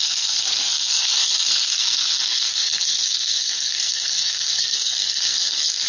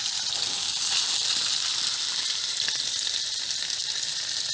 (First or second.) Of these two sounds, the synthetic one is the first